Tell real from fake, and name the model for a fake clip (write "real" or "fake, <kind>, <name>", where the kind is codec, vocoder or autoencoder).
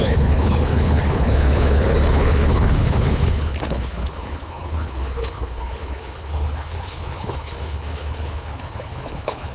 fake, codec, HILCodec